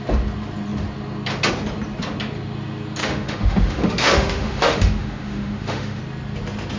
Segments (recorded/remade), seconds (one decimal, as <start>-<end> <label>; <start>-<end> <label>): 0.0-3.0 recorded; 3.0-6.0 remade; 6.0-6.8 recorded